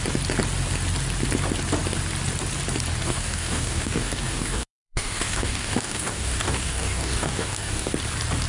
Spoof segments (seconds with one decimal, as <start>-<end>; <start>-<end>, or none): 3.0-7.9